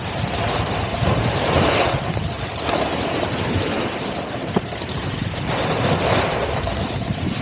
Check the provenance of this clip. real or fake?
fake